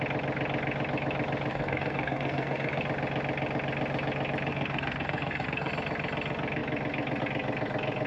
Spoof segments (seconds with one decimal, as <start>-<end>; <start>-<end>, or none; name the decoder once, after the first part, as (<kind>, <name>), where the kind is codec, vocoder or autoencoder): 1.5-2.8 (codec, SNAC); 4.5-5.7